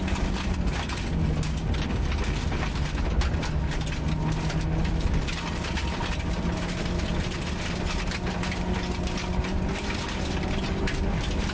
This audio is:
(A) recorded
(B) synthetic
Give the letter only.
A